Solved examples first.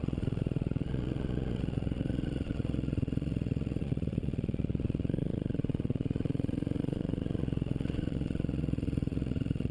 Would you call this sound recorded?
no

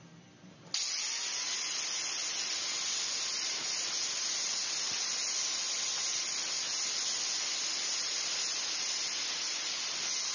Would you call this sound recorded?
yes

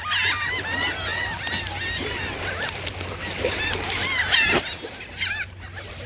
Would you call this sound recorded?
yes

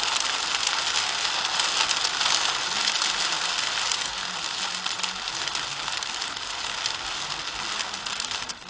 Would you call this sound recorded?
yes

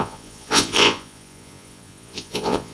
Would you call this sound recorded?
no